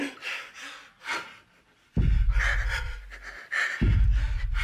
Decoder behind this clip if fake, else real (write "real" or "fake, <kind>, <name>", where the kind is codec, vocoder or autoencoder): real